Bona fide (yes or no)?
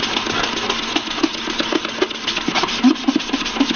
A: yes